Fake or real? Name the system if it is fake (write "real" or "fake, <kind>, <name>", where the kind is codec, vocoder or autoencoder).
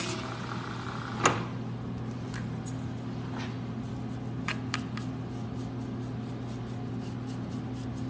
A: real